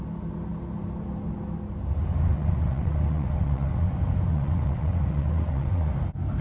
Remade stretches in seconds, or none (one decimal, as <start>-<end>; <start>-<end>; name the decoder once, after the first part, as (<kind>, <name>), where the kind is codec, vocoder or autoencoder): 2.3-3.9 (vocoder, WaveNeXt); 4.3-5.9